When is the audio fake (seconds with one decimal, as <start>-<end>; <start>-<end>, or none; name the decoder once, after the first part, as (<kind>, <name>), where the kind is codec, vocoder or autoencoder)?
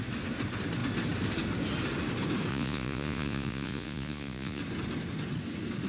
2.5-4.6 (vocoder, Vocos)